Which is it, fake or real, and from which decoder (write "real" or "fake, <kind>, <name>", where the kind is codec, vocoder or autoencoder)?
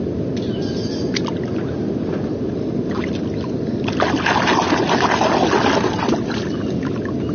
real